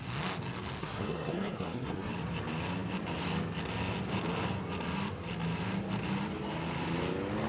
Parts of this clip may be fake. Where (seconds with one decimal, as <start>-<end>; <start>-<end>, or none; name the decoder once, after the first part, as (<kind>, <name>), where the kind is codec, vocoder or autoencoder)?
0.8-2.1 (codec, SNAC)